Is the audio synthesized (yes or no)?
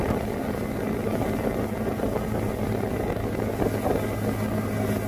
no